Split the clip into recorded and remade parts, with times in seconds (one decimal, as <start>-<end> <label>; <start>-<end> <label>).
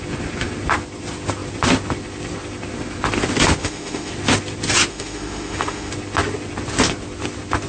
0.0-3.6 recorded; 3.6-4.1 remade; 4.1-4.9 recorded; 4.9-5.9 remade; 5.9-7.7 recorded